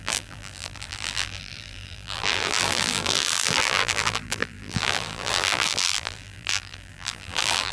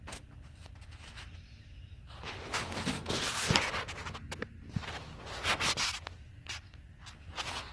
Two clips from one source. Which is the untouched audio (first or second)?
second